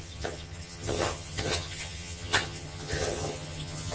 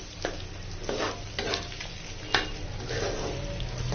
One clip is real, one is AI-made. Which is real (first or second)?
second